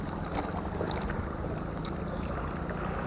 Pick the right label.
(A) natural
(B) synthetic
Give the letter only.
A